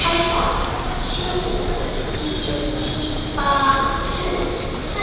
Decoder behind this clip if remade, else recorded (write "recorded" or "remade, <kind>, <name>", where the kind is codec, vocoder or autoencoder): recorded